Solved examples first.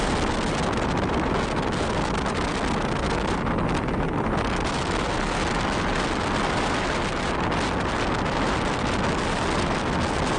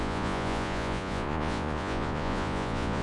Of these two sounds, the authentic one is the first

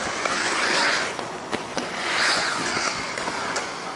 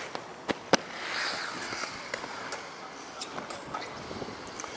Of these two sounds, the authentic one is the second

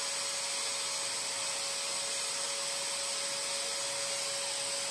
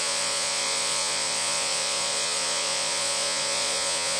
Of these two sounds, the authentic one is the first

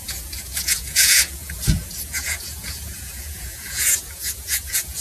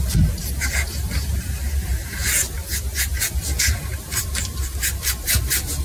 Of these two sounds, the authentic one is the second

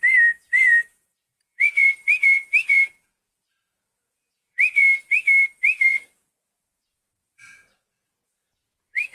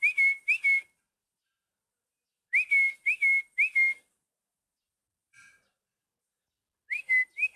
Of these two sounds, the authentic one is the second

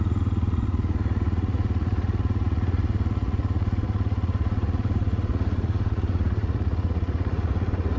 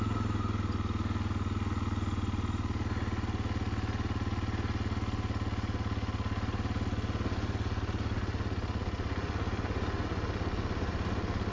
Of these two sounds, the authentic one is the second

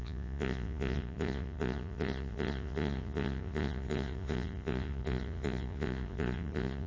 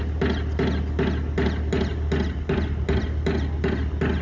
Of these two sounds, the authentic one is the second